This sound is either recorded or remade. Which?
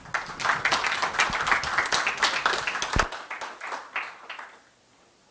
recorded